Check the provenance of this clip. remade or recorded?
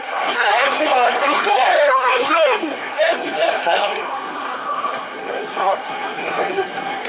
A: remade